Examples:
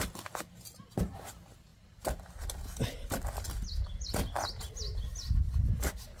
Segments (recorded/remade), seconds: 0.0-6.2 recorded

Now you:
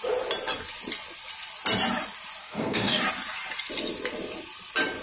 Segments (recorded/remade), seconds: 0.0-2.4 recorded; 2.4-3.0 remade; 3.0-5.0 recorded